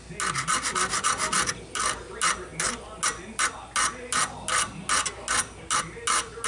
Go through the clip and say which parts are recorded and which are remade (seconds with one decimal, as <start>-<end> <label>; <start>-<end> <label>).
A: 0.0-6.5 recorded